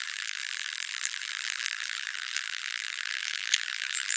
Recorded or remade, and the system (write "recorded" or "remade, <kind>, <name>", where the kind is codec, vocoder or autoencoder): remade, vocoder, BigVGAN v2